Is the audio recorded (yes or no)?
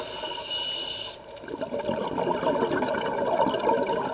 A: yes